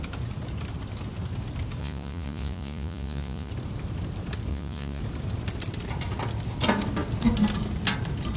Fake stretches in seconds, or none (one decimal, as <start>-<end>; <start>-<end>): 1.8-3.5; 4.5-5.0